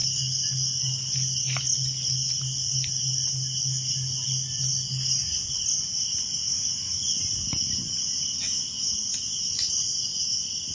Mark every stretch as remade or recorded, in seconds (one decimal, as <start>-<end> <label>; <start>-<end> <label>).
0.0-10.7 recorded